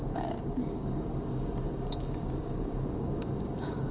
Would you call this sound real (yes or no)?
no